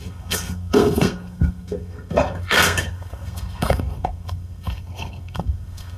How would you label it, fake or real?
fake